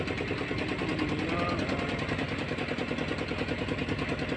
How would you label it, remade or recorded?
recorded